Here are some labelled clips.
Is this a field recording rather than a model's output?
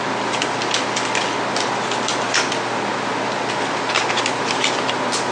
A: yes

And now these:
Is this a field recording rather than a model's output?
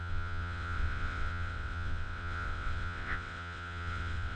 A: no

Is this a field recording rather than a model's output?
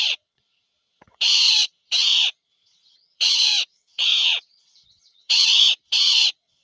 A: no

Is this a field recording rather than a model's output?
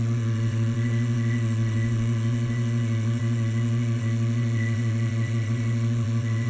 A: no